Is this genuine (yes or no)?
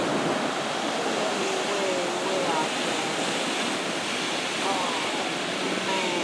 yes